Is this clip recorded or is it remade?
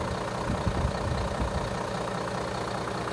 recorded